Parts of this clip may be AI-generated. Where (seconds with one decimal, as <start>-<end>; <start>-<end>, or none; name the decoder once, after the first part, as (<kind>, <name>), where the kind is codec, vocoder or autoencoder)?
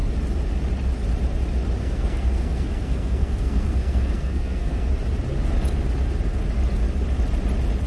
1.8-4.9 (codec, SNAC)